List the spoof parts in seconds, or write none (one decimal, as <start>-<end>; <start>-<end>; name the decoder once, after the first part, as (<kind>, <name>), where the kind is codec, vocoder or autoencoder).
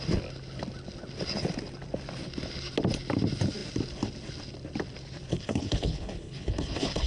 5.3-7.1 (codec, HILCodec)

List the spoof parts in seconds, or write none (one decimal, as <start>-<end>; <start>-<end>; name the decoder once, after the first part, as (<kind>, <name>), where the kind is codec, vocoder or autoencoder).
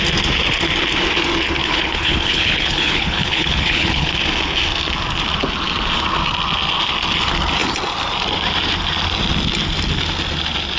1.6-4.1 (codec, HILCodec)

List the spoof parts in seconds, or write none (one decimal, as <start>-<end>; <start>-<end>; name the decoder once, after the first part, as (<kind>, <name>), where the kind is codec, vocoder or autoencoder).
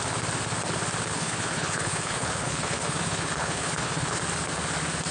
1.1-4.2 (codec, HILCodec)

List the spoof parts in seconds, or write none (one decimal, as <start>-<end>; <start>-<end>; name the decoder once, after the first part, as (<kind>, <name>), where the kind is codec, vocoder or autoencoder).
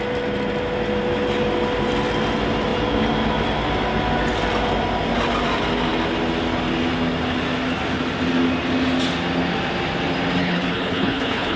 10.4-11.6 (codec, HILCodec)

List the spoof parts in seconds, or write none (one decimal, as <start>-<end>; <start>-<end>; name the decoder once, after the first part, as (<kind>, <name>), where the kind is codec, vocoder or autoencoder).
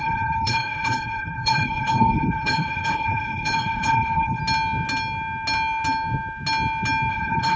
0.0-4.4 (codec, HILCodec); 7.1-7.6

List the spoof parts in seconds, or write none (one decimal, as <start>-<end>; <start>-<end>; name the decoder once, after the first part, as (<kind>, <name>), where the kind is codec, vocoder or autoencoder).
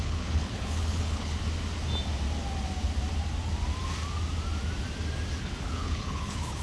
0.0-1.4 (codec, HILCodec); 5.4-6.6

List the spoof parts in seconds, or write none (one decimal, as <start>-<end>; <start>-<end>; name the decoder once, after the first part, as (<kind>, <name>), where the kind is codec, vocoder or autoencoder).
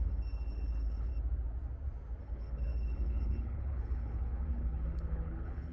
0.0-1.1 (codec, HILCodec); 2.2-5.7